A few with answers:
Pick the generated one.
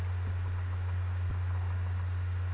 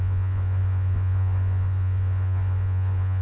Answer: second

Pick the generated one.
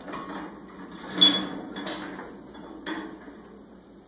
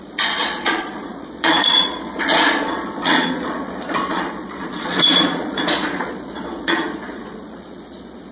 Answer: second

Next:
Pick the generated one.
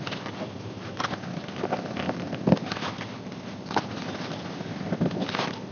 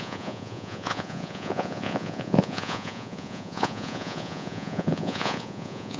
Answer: second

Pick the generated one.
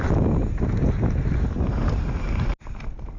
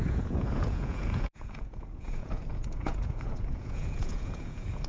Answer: second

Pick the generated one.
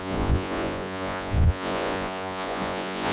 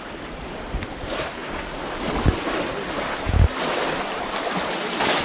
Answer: first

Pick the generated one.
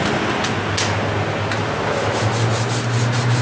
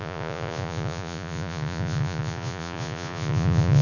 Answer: second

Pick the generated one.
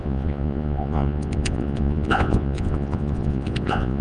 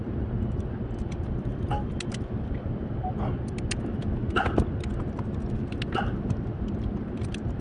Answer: first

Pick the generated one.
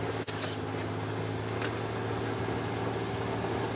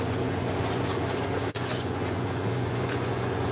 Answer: second